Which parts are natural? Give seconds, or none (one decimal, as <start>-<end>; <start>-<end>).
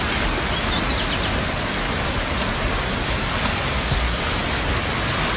0.0-3.7; 4.2-5.4